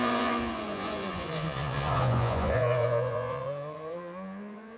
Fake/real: fake